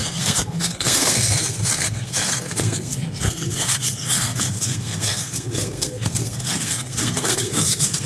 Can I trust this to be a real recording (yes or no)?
no